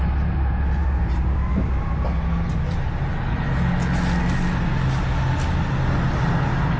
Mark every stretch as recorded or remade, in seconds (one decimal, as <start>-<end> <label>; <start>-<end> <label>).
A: 0.0-6.8 recorded